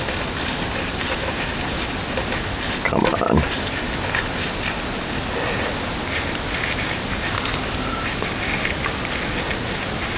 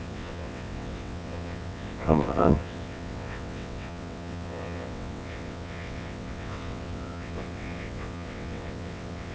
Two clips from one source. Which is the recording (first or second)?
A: first